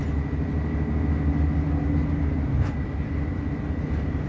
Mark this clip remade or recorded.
recorded